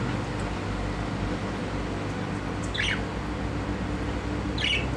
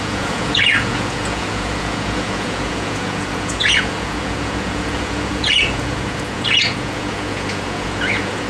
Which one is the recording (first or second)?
first